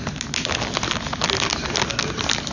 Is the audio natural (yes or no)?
yes